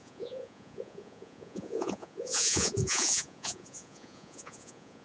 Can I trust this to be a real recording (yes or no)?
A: no